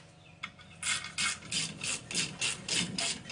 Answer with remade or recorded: recorded